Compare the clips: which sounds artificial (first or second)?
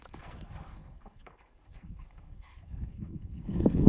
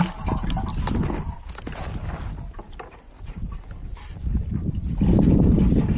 first